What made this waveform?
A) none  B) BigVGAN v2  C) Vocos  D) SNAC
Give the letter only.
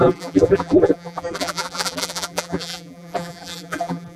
B